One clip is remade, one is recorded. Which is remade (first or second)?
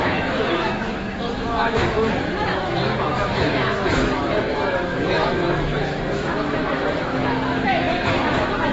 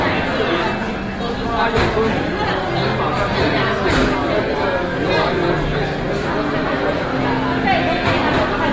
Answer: first